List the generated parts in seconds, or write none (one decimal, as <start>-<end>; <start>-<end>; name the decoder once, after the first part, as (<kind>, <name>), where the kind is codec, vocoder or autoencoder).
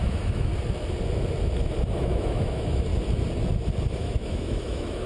0.0-0.5 (autoencoder, DAC-VAE); 1.9-2.9; 3.9-5.1